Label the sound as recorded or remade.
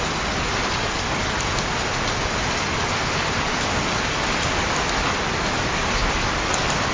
recorded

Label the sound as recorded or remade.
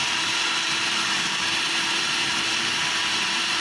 recorded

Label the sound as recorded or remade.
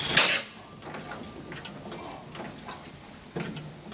recorded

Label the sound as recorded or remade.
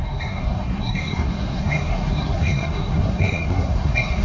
remade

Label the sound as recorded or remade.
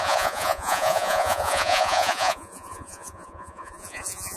remade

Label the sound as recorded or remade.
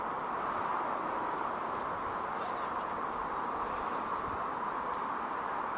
recorded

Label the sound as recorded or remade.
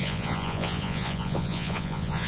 remade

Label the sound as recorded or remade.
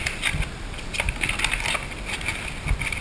recorded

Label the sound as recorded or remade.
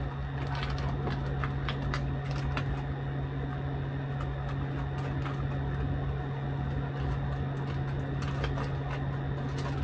recorded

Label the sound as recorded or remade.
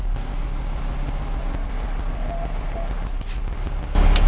recorded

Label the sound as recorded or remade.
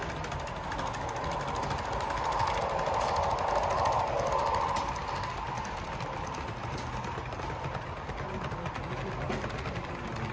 recorded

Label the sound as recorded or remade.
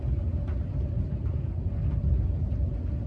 recorded